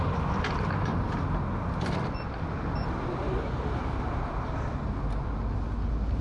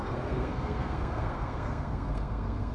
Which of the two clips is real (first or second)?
first